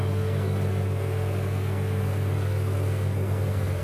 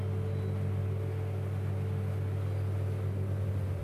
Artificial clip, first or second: first